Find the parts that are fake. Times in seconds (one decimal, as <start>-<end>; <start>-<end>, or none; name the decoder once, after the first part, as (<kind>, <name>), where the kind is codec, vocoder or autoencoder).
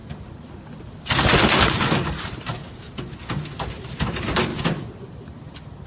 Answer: none